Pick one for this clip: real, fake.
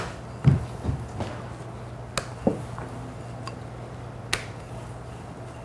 real